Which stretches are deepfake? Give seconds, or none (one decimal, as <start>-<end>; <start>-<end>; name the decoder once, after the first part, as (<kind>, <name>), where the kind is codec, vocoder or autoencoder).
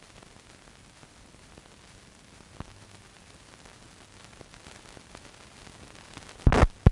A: none